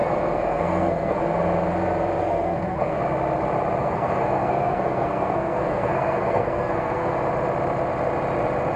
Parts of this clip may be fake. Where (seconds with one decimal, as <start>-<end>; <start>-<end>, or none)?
0.0-1.2; 2.2-3.0; 3.8-7.1